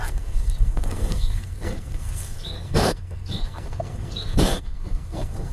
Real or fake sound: fake